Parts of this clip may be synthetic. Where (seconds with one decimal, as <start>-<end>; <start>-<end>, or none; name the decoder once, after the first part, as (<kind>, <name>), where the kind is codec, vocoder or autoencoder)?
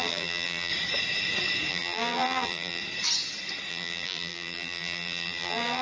0.0-0.7 (vocoder, BigVGAN v2); 1.7-2.8; 3.7-5.8